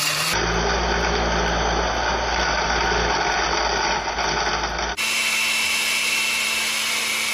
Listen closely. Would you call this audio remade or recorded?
recorded